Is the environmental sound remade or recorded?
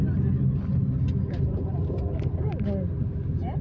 recorded